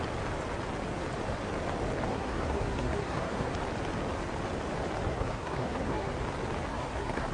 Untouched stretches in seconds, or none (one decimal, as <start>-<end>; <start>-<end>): 0.0-2.1; 3.5-5.1; 6.1-6.7